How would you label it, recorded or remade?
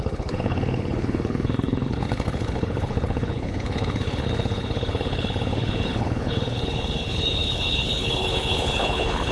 remade